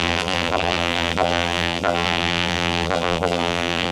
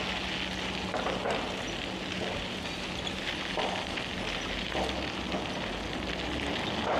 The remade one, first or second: first